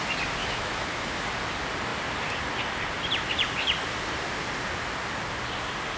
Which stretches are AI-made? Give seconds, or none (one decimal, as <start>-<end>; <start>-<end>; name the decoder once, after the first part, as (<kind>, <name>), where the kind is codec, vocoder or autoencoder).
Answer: 0.4-1.3 (autoencoder, DAC-VAE)